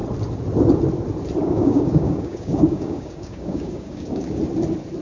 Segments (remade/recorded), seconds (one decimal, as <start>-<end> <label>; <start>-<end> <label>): 0.0-1.4 recorded; 1.4-4.4 remade; 4.4-5.0 recorded